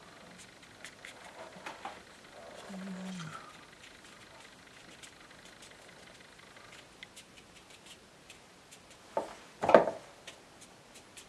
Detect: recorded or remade recorded